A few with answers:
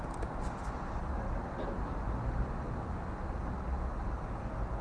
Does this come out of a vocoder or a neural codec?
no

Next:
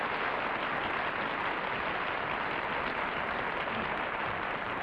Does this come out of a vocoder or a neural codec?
no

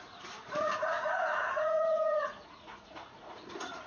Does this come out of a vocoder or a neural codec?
yes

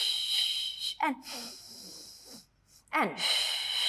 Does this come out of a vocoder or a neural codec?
no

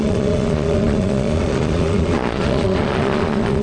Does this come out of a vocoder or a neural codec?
yes